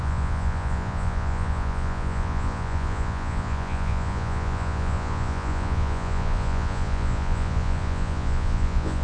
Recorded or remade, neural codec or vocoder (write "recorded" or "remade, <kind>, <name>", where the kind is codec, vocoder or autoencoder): remade, vocoder, Vocos